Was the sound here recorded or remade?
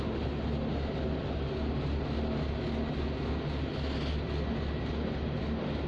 recorded